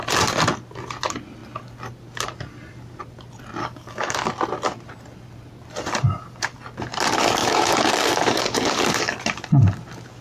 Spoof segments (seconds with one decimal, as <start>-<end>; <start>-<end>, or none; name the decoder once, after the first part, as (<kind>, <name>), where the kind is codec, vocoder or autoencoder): 3.6-4.3 (codec, DAC); 7.4-9.2